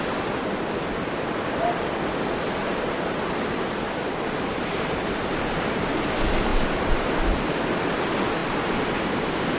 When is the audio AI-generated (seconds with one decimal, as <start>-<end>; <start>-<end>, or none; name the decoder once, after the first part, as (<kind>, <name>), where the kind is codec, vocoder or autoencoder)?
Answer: 2.6-5.9 (vocoder, BigVGAN v2); 6.5-7.1